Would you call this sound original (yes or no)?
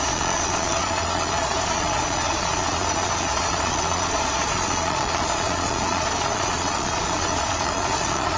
no